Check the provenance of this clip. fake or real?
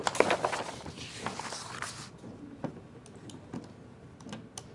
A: real